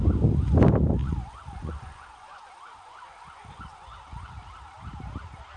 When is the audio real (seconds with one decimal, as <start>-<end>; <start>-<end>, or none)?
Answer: 0.0-1.0; 4.4-5.6